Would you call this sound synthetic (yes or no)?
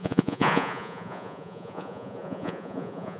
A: yes